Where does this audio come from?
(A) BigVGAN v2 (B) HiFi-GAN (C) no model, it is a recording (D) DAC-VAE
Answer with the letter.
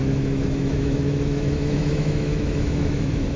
D